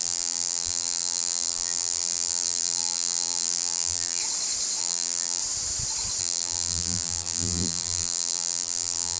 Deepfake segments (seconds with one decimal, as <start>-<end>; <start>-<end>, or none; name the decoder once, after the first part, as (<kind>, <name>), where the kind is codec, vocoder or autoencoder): 0.0-4.2 (vocoder, BigVGAN v2); 4.8-5.4; 6.2-9.2

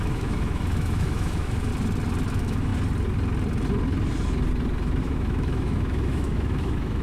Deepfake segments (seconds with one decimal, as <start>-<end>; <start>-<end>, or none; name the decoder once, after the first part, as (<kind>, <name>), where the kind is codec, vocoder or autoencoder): 0.0-1.7 (autoencoder, DAC-VAE); 2.3-2.7; 5.0-7.0

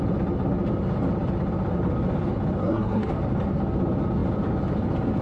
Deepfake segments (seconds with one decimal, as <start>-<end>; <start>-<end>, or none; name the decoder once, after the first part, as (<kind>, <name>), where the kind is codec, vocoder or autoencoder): 2.6-3.1 (codec, SNAC)

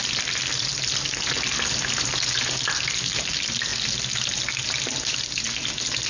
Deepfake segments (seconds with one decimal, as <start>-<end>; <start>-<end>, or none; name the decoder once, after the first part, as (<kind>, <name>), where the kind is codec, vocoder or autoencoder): none

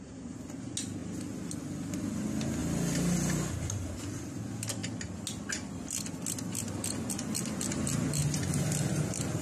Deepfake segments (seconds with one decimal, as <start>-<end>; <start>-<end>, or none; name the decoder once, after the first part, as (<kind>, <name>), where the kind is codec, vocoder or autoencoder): none

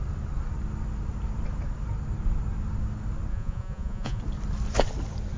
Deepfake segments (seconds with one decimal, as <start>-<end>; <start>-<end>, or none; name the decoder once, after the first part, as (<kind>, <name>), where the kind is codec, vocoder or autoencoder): 3.3-4.2 (vocoder, Vocos)

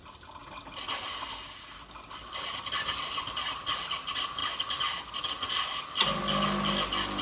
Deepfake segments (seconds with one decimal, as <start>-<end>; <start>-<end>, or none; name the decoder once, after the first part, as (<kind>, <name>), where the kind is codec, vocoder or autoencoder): none